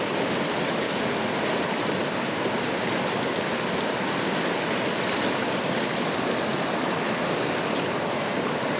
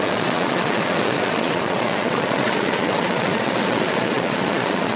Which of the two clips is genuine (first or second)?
first